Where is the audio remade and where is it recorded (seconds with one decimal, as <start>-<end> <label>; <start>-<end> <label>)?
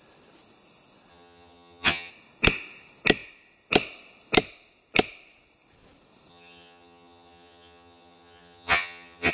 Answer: 0.0-1.1 recorded; 1.1-2.1 remade; 2.1-6.3 recorded; 6.3-9.3 remade